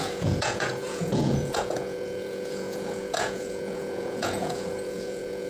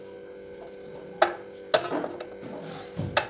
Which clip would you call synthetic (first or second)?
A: first